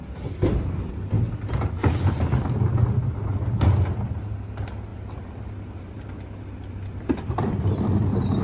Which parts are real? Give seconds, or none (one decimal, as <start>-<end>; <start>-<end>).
0.0-4.9; 7.8-8.4